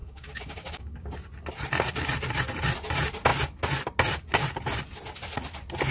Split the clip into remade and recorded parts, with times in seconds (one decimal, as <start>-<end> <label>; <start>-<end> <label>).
0.0-1.1 remade; 1.1-5.9 recorded

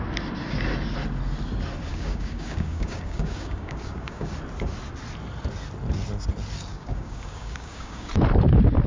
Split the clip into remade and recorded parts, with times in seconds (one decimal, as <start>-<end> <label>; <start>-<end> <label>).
0.0-1.9 recorded; 1.9-4.3 remade; 4.3-6.7 recorded; 6.7-8.1 remade; 8.1-8.9 recorded

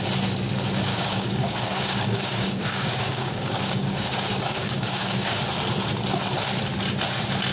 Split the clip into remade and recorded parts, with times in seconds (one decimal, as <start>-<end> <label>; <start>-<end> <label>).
0.0-0.9 recorded; 0.9-5.4 remade; 5.4-7.5 recorded

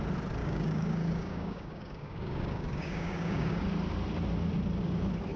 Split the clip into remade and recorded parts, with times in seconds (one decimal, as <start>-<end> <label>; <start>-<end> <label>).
0.0-0.4 recorded; 0.4-3.6 remade; 3.6-5.4 recorded

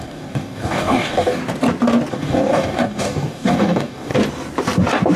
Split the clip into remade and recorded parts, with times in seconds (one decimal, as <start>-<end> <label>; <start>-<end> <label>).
0.0-1.4 remade; 1.4-2.1 recorded; 2.1-4.1 remade; 4.1-5.2 recorded

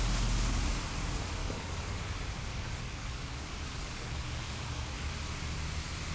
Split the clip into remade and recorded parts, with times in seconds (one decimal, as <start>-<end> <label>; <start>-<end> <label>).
0.0-1.4 recorded; 1.4-2.0 remade; 2.0-2.5 recorded; 2.5-5.1 remade; 5.1-6.1 recorded

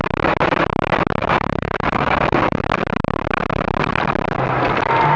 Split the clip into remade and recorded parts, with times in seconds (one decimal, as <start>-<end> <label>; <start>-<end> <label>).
0.0-1.2 recorded; 1.2-2.6 remade; 2.6-5.2 recorded